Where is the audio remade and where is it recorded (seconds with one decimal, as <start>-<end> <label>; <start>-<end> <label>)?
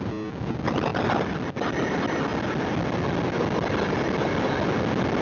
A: 0.0-5.2 recorded